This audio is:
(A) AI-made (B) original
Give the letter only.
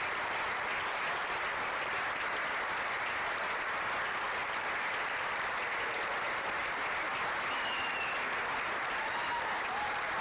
B